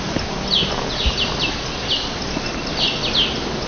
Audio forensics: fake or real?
real